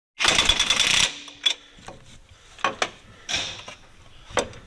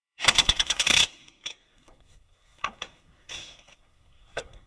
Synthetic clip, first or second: second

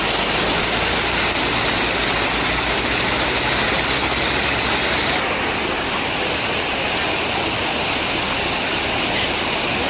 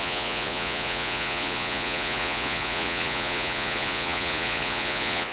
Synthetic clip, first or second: second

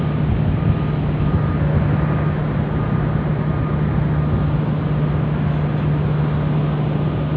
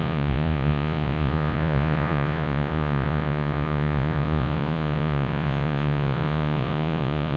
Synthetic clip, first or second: second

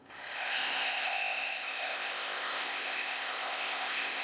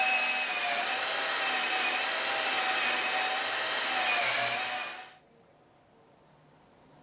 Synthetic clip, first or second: first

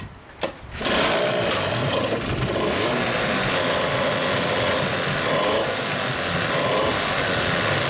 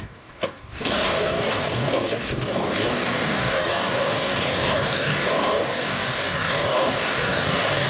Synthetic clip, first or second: second